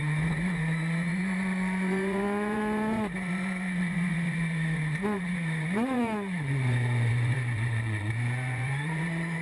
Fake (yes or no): yes